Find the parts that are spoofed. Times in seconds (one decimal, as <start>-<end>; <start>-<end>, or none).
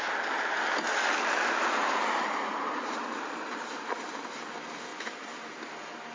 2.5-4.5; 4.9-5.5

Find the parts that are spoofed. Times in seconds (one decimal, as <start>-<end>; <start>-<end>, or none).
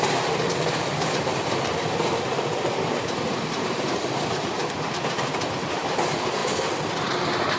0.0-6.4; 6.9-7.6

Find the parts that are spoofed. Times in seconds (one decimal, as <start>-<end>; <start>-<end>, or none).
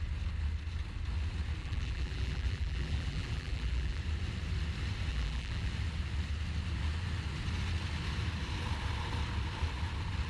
1.6-4.0; 5.1-5.7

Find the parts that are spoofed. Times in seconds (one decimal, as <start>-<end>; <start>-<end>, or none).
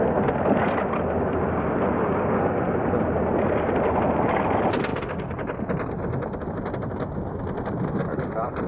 4.9-6.7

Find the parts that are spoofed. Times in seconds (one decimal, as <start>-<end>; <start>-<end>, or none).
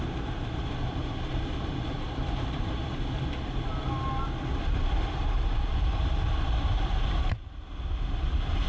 0.0-2.9; 4.5-8.7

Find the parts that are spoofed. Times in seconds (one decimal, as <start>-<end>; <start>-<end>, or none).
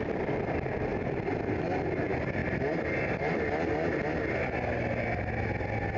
0.0-0.9; 1.9-2.4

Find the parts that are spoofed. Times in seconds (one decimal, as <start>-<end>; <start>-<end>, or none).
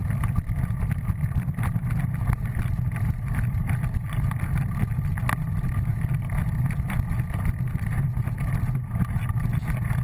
0.0-3.6; 5.9-9.4